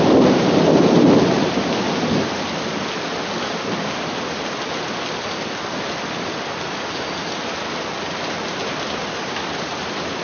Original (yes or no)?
yes